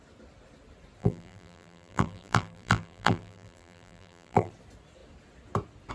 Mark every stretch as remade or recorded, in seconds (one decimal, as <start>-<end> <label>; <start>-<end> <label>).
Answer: 0.0-1.0 recorded; 1.0-4.5 remade; 4.5-5.9 recorded

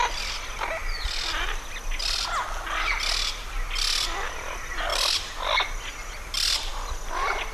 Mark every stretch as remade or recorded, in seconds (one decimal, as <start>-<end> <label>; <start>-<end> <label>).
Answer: 0.0-7.5 recorded

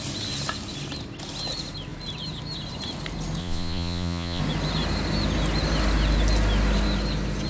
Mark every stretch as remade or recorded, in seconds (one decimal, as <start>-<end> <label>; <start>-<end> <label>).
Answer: 0.0-3.4 recorded; 3.4-4.4 remade; 4.4-7.5 recorded

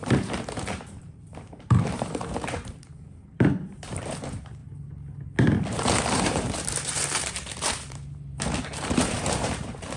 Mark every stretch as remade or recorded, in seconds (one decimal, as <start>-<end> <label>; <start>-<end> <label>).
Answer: 0.0-4.6 remade; 4.6-5.8 recorded; 5.8-10.0 remade

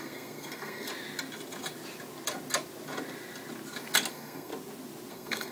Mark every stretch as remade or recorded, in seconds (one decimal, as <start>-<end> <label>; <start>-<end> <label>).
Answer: 0.0-0.9 remade; 0.9-4.1 recorded; 4.1-4.5 remade; 4.5-5.1 recorded; 5.1-5.5 remade

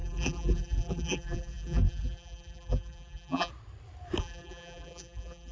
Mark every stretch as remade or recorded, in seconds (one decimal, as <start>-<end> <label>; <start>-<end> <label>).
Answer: 0.0-3.5 remade; 3.5-4.2 recorded; 4.2-5.5 remade

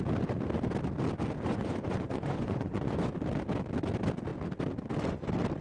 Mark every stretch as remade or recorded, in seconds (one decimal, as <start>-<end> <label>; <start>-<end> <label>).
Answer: 0.0-1.5 recorded; 1.5-3.1 remade; 3.1-5.6 recorded